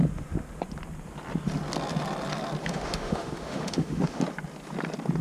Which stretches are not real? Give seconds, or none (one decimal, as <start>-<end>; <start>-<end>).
2.6-4.2